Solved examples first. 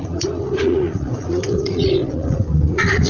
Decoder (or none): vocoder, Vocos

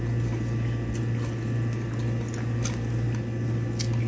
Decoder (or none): none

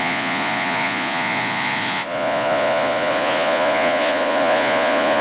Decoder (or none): vocoder, Vocos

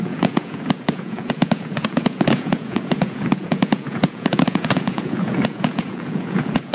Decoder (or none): vocoder, Vocos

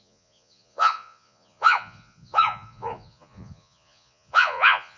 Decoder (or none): vocoder, Vocos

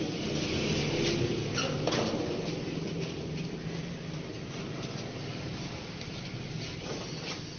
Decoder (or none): none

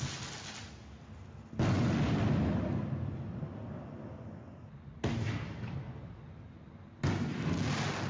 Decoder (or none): none